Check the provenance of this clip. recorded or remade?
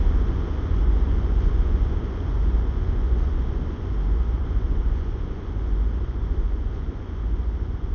remade